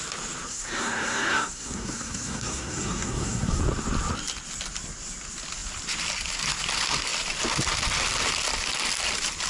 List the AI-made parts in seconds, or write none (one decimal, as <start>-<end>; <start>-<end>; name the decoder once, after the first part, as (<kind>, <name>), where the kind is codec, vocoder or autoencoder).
0.5-3.6 (codec, SNAC)